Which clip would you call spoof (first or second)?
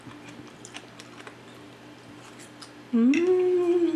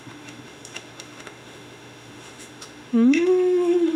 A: second